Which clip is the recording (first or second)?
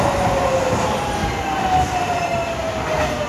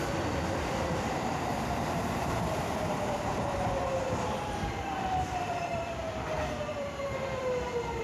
first